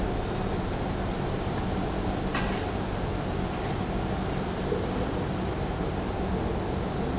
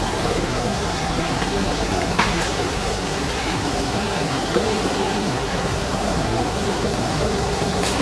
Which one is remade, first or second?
second